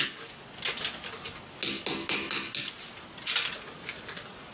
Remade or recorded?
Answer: recorded